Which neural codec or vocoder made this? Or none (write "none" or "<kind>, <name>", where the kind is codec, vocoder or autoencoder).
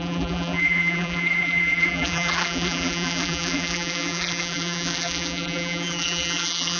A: vocoder, BigVGAN v2